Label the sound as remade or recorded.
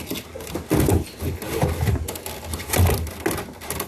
recorded